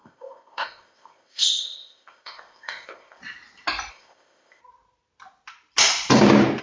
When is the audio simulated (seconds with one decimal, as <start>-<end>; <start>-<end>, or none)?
0.0-3.2; 3.9-4.6